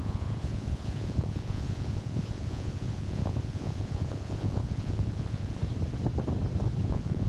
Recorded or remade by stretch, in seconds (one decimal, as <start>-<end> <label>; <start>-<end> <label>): 0.0-5.6 remade; 5.6-6.8 recorded; 6.8-7.3 remade